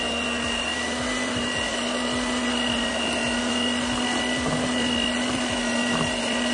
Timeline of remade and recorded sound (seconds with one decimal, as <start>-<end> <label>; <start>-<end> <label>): 0.0-6.5 recorded